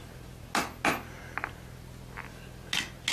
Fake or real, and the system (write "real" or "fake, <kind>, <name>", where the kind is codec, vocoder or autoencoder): real